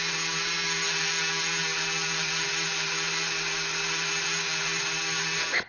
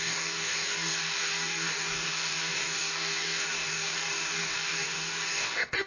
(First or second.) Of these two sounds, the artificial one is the second